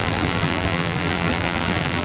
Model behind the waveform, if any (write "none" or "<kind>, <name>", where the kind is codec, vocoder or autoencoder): vocoder, BigVGAN v2